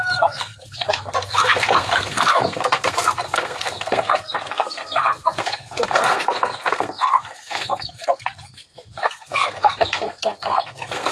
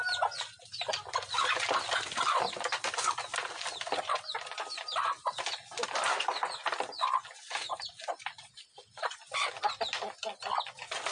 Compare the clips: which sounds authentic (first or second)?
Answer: second